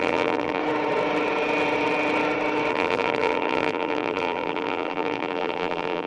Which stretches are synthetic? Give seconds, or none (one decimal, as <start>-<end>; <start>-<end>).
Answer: 0.0-0.6; 2.7-6.1